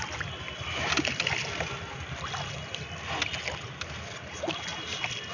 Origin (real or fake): real